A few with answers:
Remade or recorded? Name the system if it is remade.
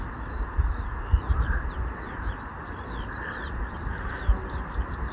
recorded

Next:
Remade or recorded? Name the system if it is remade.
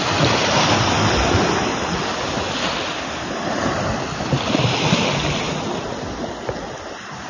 recorded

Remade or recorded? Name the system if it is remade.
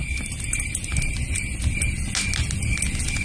recorded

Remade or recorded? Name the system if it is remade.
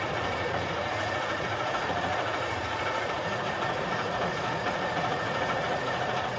remade, vocoder, Vocos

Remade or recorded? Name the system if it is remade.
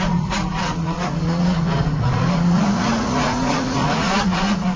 remade, vocoder, Vocos